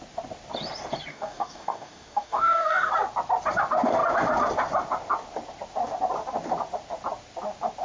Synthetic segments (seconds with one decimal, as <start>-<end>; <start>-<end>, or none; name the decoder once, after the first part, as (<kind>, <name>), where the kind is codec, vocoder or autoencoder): 1.1-2.9 (codec, DAC)